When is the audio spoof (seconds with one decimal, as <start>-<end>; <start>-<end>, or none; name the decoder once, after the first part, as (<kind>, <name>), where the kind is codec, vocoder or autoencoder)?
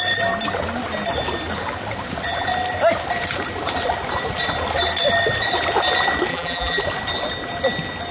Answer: 6.3-6.8 (vocoder, BigVGAN v2)